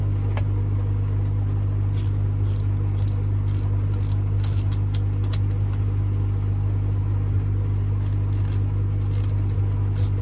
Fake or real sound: real